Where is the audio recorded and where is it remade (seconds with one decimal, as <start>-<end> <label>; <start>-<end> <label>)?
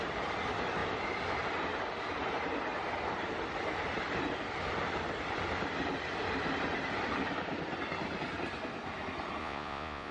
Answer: 0.0-9.4 recorded; 9.4-10.1 remade